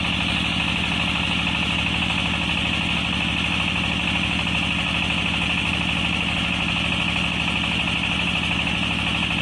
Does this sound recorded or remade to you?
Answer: recorded